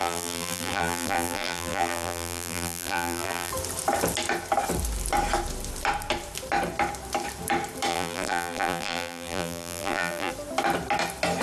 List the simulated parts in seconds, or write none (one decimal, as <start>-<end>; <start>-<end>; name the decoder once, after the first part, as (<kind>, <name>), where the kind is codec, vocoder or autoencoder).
0.0-3.5 (vocoder, BigVGAN v2); 7.9-10.3